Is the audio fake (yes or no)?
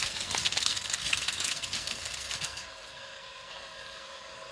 yes